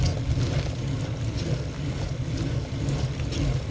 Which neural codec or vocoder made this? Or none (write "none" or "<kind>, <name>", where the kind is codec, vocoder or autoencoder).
none